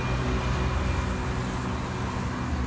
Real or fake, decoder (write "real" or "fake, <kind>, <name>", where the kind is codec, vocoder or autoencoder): real